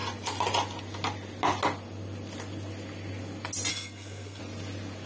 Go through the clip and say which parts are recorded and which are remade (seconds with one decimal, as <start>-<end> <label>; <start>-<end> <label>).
0.0-3.7 recorded; 3.7-4.4 remade; 4.4-5.1 recorded